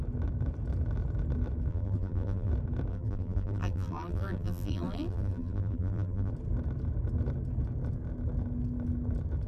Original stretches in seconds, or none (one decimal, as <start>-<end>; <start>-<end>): 0.0-1.7; 2.5-2.9; 6.3-9.5